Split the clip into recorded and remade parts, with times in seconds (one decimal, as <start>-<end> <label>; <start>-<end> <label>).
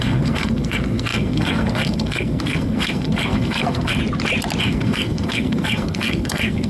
0.0-4.0 remade; 4.0-4.6 recorded; 4.6-6.7 remade